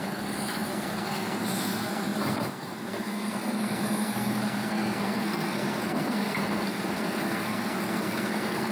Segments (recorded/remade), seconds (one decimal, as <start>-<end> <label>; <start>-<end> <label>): 0.0-8.7 remade